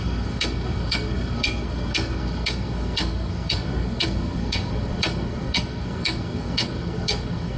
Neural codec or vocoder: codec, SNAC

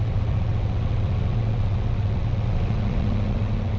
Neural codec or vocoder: vocoder, WaveNeXt